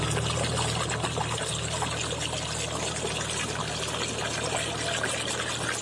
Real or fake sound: real